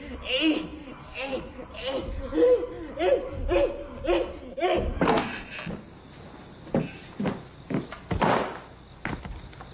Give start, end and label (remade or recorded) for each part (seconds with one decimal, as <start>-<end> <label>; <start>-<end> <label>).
0.0-0.7 recorded; 0.7-4.3 remade; 4.3-9.7 recorded